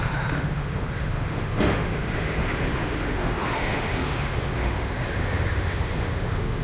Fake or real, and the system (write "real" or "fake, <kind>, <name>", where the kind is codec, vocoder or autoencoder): fake, autoencoder, DAC-VAE